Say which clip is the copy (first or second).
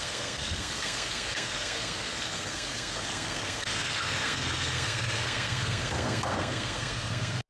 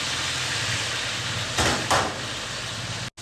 first